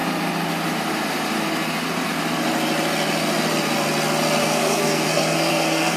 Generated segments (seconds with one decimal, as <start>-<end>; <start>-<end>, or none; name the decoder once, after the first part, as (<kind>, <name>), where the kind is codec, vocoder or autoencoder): 4.4-6.0 (codec, SNAC)